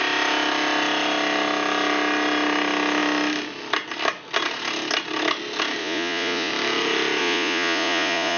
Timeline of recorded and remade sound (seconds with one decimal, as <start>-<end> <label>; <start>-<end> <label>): 0.0-5.8 recorded; 5.8-6.5 remade; 6.5-7.2 recorded; 7.2-8.4 remade